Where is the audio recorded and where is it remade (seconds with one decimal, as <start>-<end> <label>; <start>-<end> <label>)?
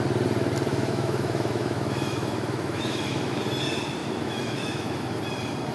0.0-0.7 recorded; 0.7-3.4 remade; 3.4-4.0 recorded; 4.0-5.2 remade; 5.2-5.7 recorded